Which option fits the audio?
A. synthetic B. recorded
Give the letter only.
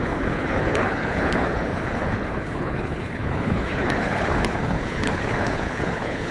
A